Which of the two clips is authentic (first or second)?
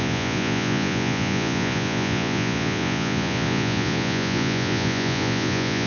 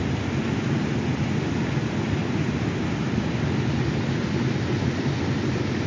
second